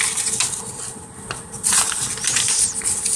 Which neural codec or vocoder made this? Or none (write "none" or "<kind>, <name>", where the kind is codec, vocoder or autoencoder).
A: none